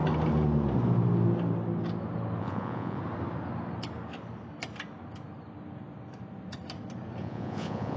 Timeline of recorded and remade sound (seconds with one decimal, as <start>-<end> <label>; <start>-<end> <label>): 0.0-2.4 recorded; 2.4-3.0 remade; 3.0-7.2 recorded; 7.2-8.0 remade